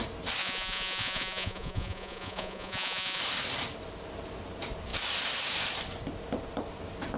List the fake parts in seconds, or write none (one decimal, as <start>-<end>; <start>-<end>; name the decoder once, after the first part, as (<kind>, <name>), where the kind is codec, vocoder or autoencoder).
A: 0.4-3.2 (vocoder, Vocos)